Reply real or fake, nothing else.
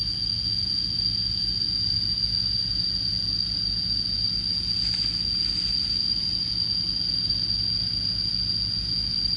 real